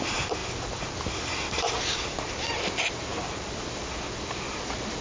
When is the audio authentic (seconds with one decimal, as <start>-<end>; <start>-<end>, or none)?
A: 0.0-5.0